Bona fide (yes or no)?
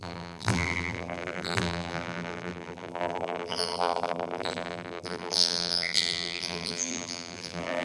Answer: no